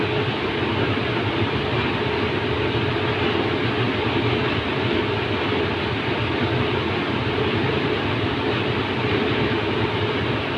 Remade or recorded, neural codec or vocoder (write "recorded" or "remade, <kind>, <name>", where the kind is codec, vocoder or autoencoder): recorded